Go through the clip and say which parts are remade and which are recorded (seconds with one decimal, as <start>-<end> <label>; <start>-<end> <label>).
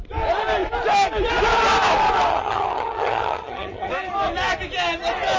0.0-2.3 recorded; 2.3-3.9 remade; 3.9-5.4 recorded